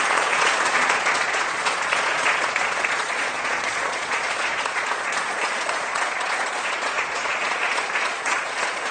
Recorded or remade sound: remade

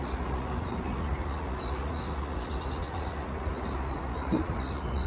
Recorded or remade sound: remade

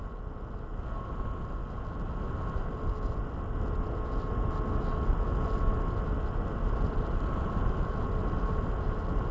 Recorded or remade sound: recorded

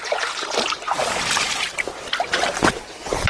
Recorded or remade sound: recorded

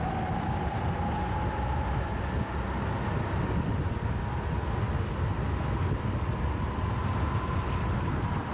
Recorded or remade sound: recorded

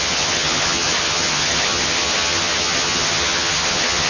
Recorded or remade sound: remade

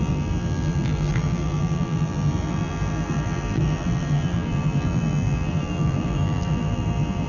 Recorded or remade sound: remade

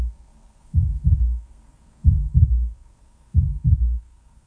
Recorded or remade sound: remade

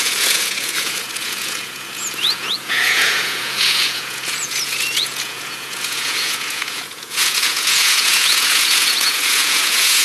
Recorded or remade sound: remade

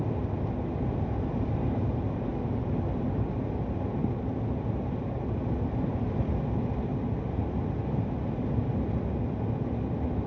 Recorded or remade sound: recorded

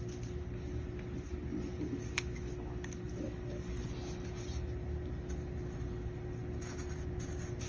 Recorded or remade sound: recorded